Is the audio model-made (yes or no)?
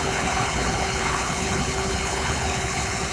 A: yes